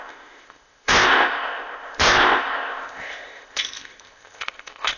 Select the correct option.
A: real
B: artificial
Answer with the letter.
B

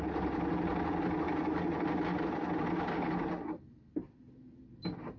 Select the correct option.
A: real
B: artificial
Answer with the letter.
A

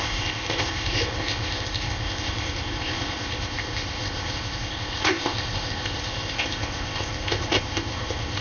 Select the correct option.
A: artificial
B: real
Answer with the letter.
A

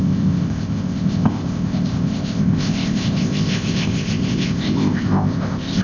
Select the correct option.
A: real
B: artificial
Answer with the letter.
B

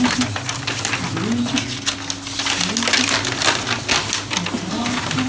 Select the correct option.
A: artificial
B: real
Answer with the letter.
B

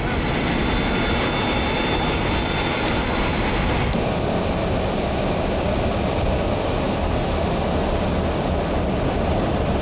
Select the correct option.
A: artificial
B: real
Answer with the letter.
B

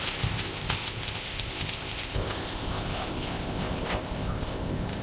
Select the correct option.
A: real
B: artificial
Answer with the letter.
B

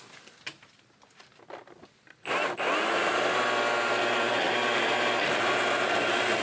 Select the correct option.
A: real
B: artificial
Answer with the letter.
A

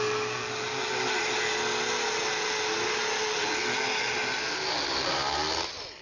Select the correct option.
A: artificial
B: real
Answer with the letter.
B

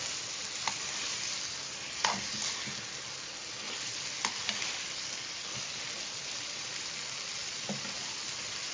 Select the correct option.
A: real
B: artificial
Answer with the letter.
A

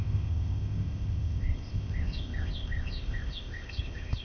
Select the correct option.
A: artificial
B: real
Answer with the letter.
A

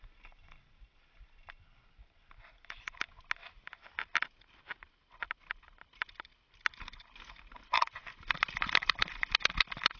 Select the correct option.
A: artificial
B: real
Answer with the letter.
B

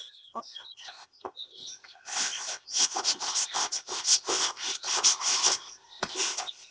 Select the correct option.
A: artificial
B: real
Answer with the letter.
A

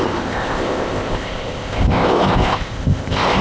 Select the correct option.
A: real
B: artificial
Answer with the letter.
B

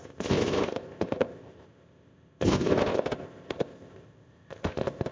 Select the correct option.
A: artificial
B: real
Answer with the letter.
A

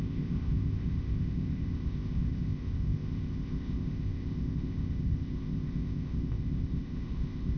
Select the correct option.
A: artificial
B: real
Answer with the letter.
A